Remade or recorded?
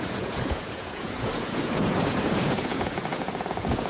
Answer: remade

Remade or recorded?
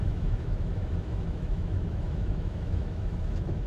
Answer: remade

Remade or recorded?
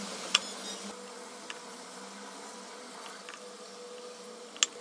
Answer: recorded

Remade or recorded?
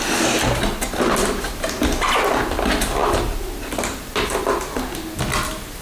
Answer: recorded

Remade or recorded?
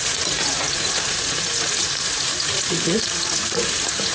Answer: remade